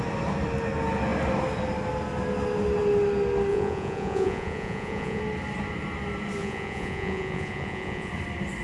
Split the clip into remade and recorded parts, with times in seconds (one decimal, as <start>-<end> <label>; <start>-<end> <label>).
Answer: 0.0-3.5 recorded; 3.5-5.2 remade; 5.2-6.4 recorded; 6.4-8.1 remade; 8.1-8.6 recorded